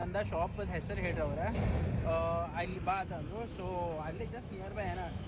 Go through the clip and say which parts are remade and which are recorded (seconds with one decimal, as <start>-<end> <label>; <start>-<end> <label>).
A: 0.0-2.7 recorded; 2.7-5.3 remade